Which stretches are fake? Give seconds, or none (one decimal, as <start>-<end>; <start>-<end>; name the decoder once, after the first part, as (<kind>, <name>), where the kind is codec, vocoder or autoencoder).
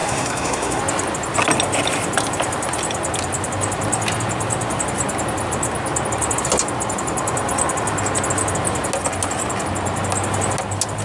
0.0-0.8 (codec, SNAC)